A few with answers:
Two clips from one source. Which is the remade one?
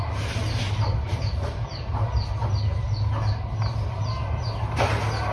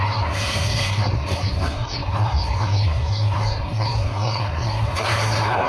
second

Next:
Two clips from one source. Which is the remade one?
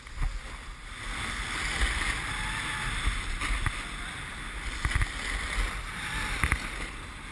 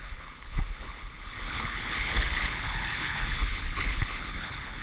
second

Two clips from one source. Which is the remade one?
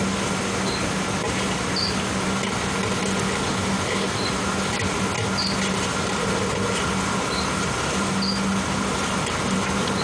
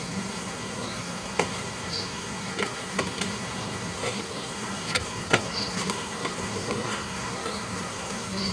second